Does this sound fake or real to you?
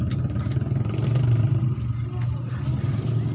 real